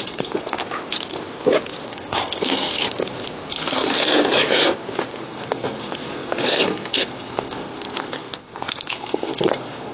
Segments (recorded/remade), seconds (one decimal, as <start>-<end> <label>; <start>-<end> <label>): 0.0-0.6 remade; 0.6-1.9 recorded; 1.9-2.8 remade; 2.8-3.5 recorded; 3.5-4.1 remade; 4.1-5.2 recorded; 5.2-9.9 remade